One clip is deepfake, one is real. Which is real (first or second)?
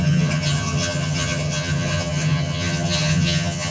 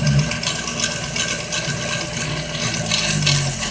second